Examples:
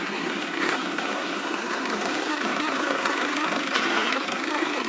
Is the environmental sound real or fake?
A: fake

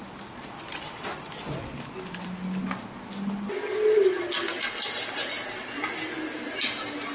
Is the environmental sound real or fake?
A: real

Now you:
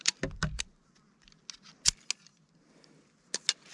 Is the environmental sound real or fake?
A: real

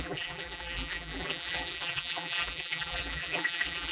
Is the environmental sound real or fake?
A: fake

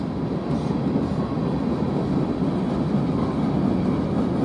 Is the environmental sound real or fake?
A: real